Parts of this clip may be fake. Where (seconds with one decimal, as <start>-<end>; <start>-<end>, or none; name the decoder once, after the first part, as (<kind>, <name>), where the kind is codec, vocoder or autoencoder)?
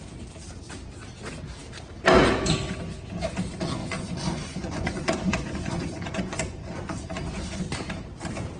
3.8-7.6 (vocoder, Vocos)